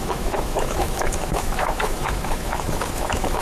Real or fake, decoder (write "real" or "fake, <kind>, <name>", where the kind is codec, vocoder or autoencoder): fake, autoencoder, DAC-VAE